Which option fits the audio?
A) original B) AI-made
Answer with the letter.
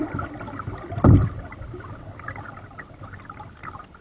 A